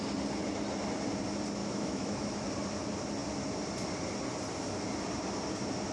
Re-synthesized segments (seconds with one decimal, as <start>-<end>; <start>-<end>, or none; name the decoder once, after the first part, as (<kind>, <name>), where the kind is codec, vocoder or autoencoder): 1.6-2.4 (autoencoder, DAC-VAE)